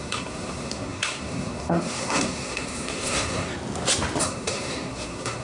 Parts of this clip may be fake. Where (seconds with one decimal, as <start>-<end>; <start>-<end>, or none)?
0.0-3.5; 4.2-5.4